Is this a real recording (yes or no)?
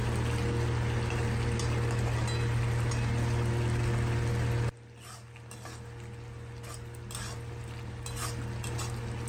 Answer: yes